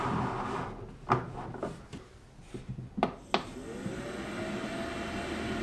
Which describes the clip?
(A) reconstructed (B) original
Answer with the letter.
B